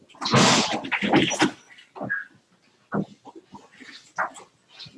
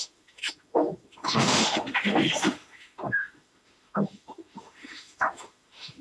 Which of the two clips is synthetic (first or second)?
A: second